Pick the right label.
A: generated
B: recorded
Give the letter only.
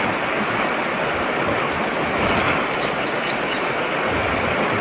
B